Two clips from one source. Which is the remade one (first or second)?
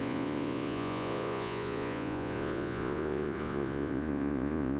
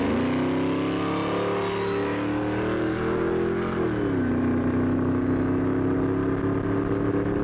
first